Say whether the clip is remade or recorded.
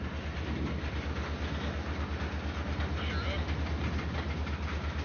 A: recorded